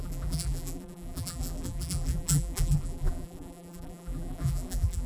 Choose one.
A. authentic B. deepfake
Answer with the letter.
B